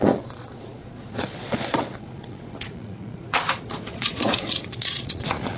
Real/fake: fake